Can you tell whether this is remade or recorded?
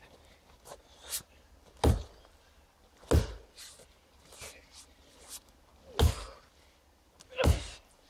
recorded